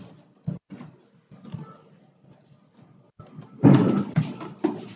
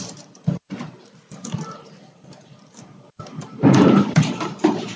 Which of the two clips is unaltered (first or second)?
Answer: first